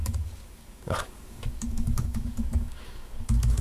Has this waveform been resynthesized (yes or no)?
yes